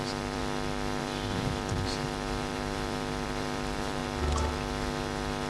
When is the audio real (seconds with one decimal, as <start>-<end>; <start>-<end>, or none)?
0.4-1.0; 4.0-5.5